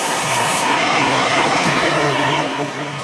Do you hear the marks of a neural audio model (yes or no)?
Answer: yes